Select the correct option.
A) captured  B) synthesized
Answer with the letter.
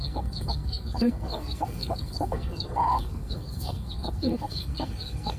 B